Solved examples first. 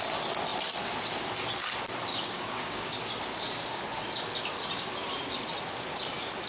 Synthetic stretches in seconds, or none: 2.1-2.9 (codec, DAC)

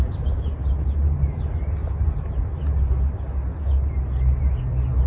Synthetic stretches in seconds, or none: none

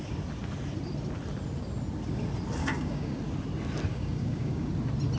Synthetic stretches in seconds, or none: 2.6-3.2 (codec, DAC); 3.9-4.7

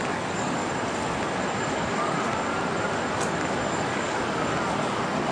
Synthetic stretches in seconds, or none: 0.0-0.6 (codec, DAC); 1.7-2.3; 3.7-5.3

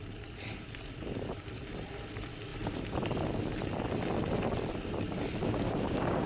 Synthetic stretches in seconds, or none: 5.4-6.3 (codec, DAC)

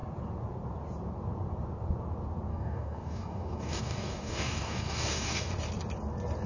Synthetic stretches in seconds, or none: 2.5-5.5 (codec, DAC)

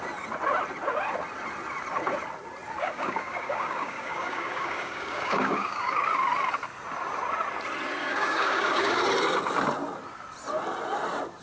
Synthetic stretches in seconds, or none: 2.8-6.0 (codec, DAC); 8.0-9.0

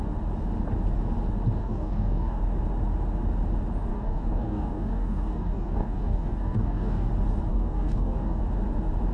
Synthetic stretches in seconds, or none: 1.6-2.4 (codec, DAC); 3.9-7.1; 7.5-8.4